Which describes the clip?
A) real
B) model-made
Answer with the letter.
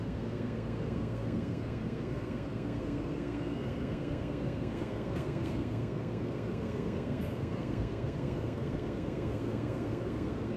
B